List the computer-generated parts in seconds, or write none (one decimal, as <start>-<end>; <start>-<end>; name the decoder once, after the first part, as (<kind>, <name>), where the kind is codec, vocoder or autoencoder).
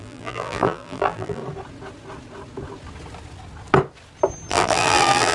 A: 0.0-1.4 (vocoder, BigVGAN v2); 4.5-5.3